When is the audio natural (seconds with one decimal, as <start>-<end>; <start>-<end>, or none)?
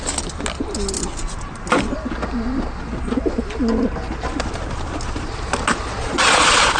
0.0-6.0